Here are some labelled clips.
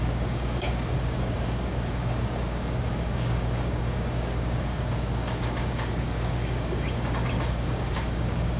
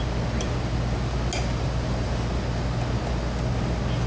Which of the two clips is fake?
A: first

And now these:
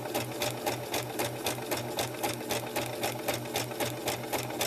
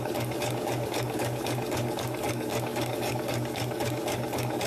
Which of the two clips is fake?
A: second